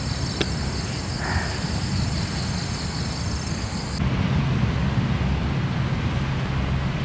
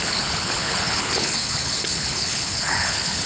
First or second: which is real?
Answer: first